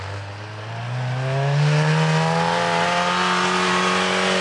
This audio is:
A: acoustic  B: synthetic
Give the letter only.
A